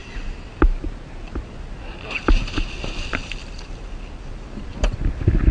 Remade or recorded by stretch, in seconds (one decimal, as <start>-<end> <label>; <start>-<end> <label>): 0.0-5.5 recorded